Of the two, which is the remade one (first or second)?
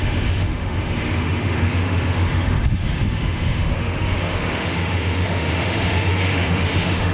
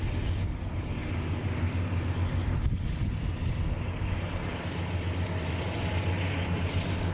first